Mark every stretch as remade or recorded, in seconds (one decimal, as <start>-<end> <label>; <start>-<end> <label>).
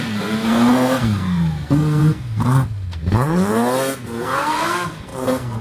0.0-5.6 remade